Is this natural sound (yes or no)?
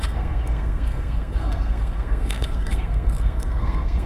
no